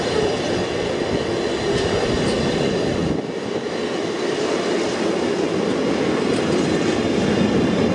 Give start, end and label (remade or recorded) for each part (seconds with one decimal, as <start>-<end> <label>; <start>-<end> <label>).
0.0-7.9 recorded